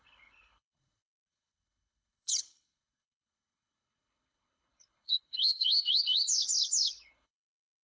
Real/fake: fake